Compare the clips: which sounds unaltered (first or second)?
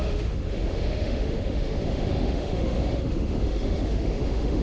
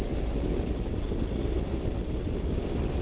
second